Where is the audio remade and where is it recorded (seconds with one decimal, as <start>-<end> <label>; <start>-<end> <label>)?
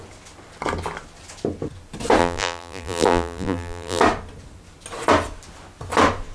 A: 0.0-2.2 recorded; 2.2-4.0 remade; 4.0-6.3 recorded